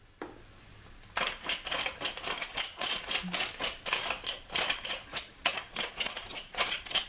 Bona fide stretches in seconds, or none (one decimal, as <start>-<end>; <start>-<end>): 0.0-2.5; 3.1-5.1